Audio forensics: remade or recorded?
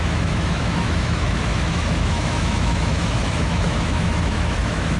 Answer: remade